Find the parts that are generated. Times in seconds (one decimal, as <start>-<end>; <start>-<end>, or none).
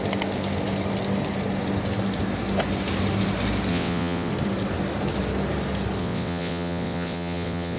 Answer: 3.7-4.3; 6.0-7.8